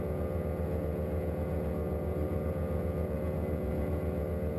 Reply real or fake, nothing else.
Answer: fake